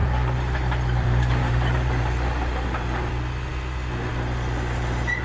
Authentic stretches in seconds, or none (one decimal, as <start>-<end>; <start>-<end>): 3.1-5.2